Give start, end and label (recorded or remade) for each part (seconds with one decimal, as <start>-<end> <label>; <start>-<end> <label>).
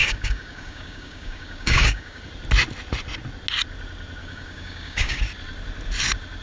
0.0-2.2 remade; 2.2-4.2 recorded; 4.2-5.2 remade; 5.2-6.4 recorded